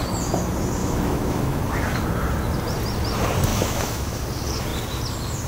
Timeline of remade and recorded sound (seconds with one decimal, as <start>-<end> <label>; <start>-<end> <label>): 0.0-0.8 recorded; 0.8-1.6 remade; 1.6-3.5 recorded; 3.5-4.2 remade; 4.2-5.5 recorded